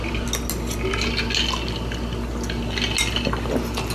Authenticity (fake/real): real